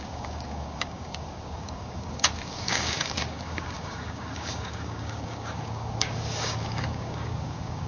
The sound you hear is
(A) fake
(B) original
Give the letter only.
A